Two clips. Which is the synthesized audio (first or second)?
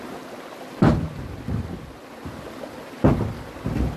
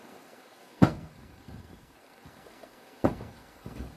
second